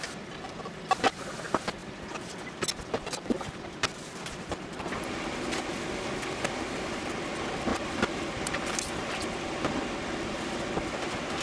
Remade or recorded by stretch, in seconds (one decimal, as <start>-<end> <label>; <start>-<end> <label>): 0.0-11.4 recorded